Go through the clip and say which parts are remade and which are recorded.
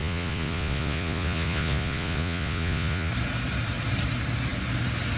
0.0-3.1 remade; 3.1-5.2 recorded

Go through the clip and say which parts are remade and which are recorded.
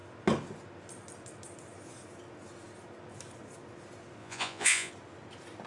0.0-4.2 recorded; 4.2-4.9 remade; 4.9-5.7 recorded